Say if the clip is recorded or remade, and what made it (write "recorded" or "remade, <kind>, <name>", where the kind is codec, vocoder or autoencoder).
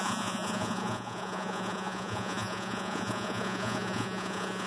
remade, vocoder, Vocos